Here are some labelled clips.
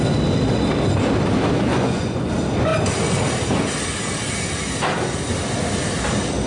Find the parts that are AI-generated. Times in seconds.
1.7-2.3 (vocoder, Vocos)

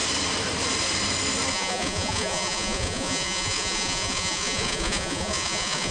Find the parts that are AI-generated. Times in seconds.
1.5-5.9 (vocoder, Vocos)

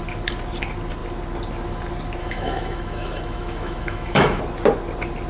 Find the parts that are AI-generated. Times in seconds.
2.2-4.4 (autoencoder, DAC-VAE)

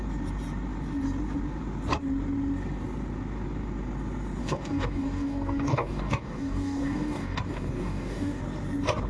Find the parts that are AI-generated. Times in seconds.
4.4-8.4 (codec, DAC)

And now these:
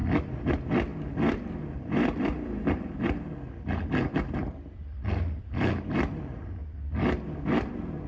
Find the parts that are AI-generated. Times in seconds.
0.0-0.9 (vocoder, BigVGAN v2); 1.6-8.1

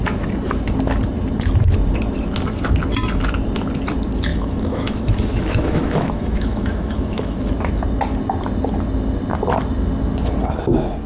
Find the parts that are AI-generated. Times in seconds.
4.3-7.5 (autoencoder, DAC-VAE)

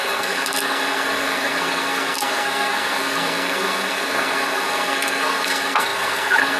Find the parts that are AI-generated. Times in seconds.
0.0-6.6 (codec, SNAC)

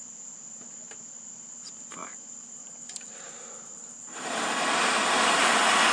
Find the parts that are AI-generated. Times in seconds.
none